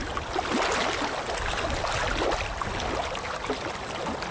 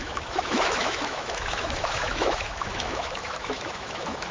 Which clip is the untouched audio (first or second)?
first